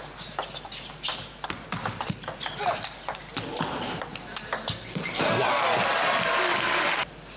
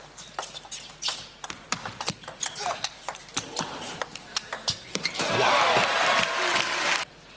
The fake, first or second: second